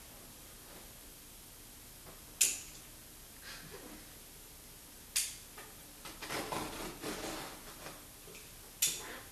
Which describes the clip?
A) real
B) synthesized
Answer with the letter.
A